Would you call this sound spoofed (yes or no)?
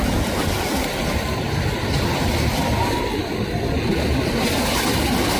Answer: no